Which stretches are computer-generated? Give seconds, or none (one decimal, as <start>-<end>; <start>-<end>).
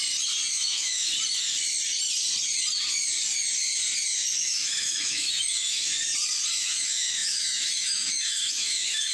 0.5-1.1; 4.4-5.9; 6.5-9.1